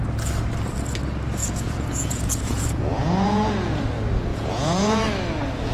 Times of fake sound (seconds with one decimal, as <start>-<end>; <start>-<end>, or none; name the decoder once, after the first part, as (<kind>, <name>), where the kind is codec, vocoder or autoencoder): 1.4-3.8 (vocoder, Vocos); 4.3-5.0